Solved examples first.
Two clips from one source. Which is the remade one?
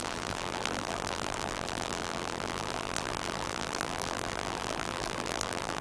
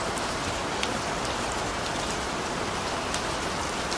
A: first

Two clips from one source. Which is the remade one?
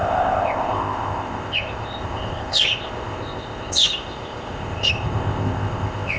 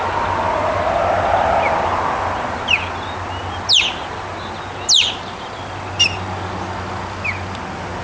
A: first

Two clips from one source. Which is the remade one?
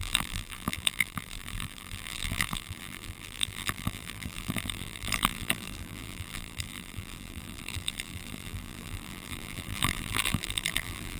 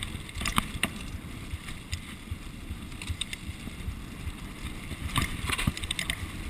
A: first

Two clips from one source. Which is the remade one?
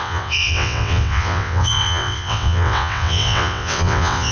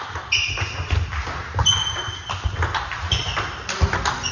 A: first